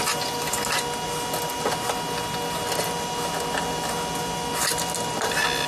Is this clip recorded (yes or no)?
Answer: yes